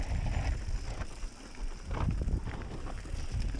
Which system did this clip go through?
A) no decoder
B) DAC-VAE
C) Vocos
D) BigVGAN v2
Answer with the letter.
A